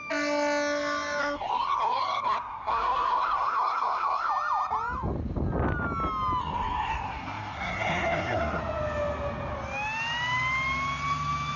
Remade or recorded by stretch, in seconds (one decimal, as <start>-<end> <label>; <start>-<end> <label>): 0.0-1.2 recorded; 1.2-4.3 remade; 4.3-6.4 recorded; 6.4-8.6 remade; 8.6-11.6 recorded